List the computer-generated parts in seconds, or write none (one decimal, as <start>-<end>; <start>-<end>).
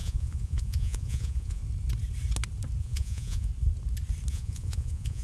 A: 0.0-1.6; 2.8-3.5; 4.3-5.2